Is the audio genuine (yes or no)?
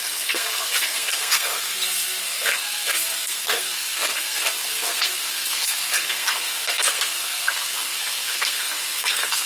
no